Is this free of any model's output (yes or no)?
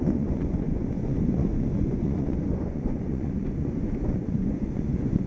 no